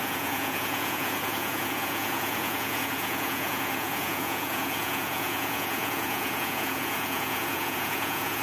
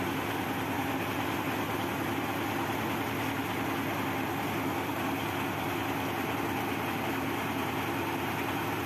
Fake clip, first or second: first